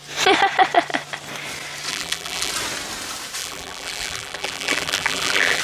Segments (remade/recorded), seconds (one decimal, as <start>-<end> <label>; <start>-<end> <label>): 0.0-1.9 recorded; 1.9-2.5 remade; 2.5-3.4 recorded; 3.4-5.6 remade